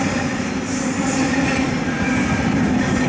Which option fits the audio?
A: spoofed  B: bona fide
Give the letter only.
A